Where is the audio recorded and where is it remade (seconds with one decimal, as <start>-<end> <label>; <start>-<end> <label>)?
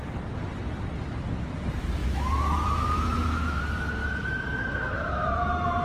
0.0-2.0 recorded; 2.0-3.6 remade; 3.6-4.0 recorded; 4.0-5.8 remade